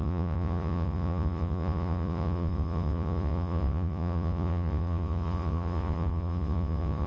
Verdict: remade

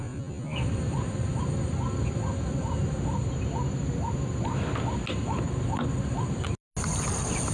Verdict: recorded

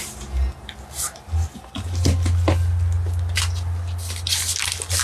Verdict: recorded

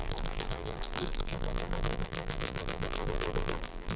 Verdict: remade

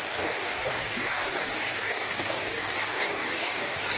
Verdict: remade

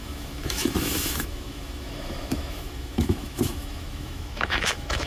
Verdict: remade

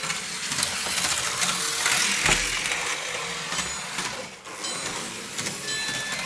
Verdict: recorded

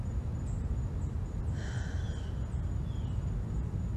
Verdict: recorded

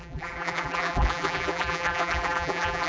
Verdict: remade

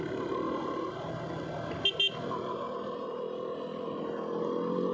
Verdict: recorded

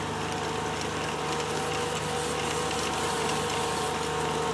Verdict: recorded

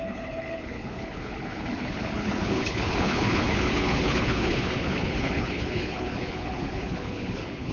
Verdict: remade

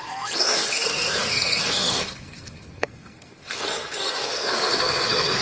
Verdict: remade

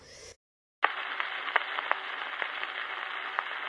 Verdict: recorded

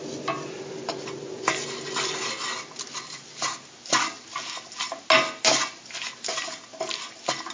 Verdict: recorded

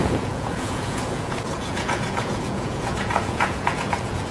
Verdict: remade